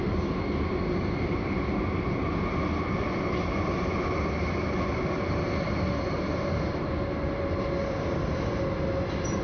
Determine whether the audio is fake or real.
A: real